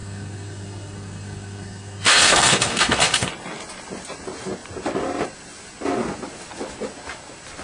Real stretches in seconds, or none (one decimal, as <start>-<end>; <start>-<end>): 3.3-7.6